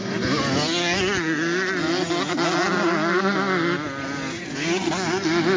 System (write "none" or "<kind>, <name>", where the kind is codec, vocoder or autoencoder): none